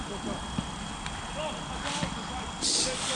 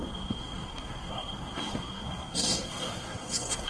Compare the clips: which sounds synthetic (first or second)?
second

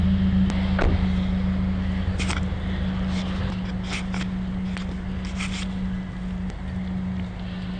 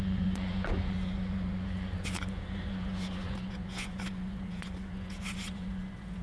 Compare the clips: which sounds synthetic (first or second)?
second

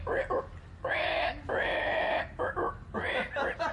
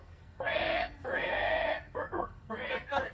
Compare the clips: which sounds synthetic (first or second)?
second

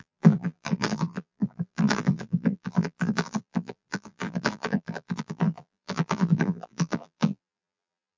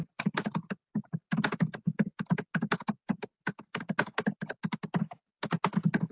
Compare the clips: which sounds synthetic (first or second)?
first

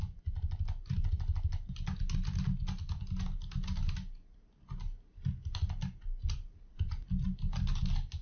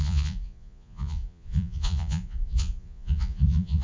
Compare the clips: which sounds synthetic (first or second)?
second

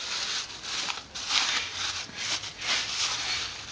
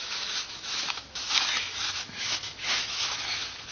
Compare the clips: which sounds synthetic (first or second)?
second